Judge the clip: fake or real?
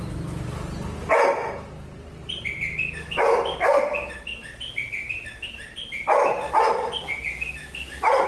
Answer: real